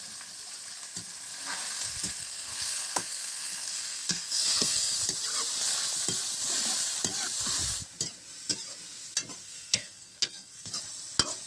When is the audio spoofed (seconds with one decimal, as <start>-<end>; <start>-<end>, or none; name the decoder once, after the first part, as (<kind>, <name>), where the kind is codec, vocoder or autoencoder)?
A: 2.2-5.0 (codec, SNAC); 9.4-10.7